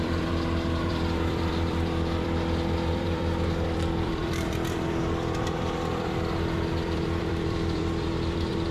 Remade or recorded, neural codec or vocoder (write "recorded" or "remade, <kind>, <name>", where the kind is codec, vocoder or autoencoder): remade, vocoder, BigVGAN v2